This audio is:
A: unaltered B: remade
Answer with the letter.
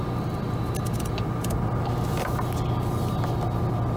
A